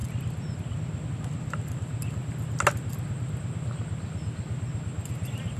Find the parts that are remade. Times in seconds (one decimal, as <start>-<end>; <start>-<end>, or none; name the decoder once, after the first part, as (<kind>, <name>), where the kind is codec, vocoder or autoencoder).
none